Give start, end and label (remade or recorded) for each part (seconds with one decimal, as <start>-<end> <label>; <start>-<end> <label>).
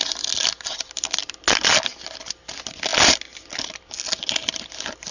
0.0-5.1 recorded